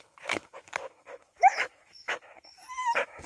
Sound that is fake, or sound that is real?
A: fake